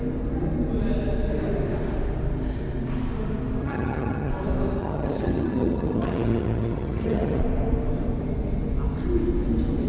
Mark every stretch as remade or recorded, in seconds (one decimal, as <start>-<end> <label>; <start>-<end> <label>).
0.0-3.6 recorded; 3.6-4.3 remade; 4.3-4.8 recorded; 4.8-7.4 remade; 7.4-9.9 recorded